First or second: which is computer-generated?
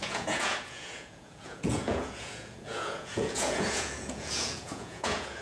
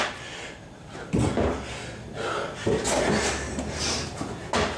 first